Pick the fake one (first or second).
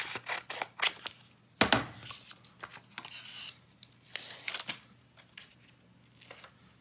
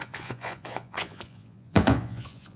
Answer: second